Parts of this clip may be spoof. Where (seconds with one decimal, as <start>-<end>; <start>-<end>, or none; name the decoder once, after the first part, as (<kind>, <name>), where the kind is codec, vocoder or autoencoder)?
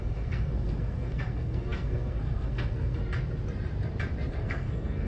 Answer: 0.0-3.0 (codec, SNAC); 4.3-5.1